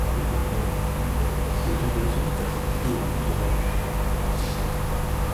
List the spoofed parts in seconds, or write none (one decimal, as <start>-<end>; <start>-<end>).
none